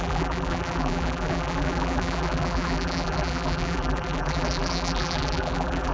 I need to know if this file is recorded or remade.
remade